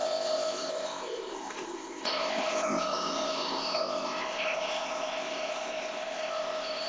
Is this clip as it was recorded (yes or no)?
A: no